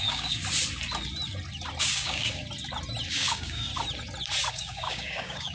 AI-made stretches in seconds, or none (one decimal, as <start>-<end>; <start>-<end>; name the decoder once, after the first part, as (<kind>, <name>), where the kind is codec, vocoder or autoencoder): 0.0-0.4 (codec, DAC); 1.8-2.4; 3.1-3.7; 4.5-5.5